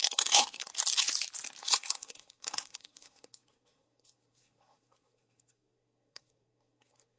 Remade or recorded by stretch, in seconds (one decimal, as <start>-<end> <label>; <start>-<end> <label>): 0.0-0.7 remade; 0.7-1.6 recorded; 1.6-7.2 remade

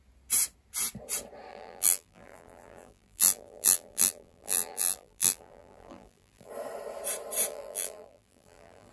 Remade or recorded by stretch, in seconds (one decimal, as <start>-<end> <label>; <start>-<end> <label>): 0.0-1.5 recorded; 1.5-6.5 remade; 6.5-7.5 recorded; 7.5-8.9 remade

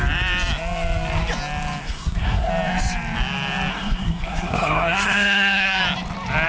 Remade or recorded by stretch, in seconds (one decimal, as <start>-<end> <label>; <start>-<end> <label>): 0.0-1.8 recorded; 1.8-2.5 remade; 2.5-3.7 recorded; 3.7-5.8 remade; 5.8-6.5 recorded

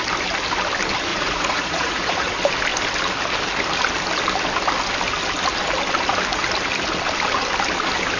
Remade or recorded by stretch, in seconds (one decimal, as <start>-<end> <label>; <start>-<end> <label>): 0.0-1.1 recorded; 1.1-2.3 remade; 2.3-8.2 recorded

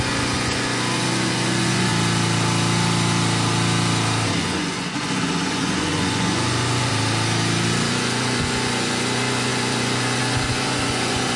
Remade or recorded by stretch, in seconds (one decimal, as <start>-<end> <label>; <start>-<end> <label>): 0.0-1.9 remade; 1.9-4.4 recorded; 4.4-6.9 remade; 6.9-7.9 recorded; 7.9-11.4 remade

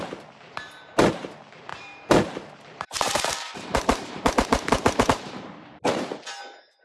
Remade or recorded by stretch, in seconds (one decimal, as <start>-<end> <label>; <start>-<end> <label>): 0.0-1.7 recorded; 1.7-5.8 remade; 5.8-6.8 recorded

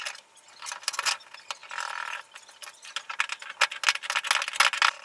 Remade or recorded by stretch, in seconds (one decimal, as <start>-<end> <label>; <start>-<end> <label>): 0.0-5.0 recorded